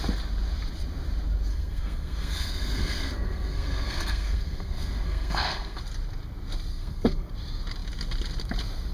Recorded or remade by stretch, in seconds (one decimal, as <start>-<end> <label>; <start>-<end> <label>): 0.0-1.5 recorded; 1.5-5.8 remade; 5.8-6.7 recorded; 6.7-7.3 remade; 7.3-8.9 recorded